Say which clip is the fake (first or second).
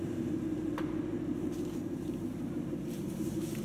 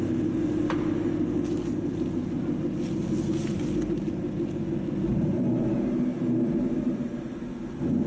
first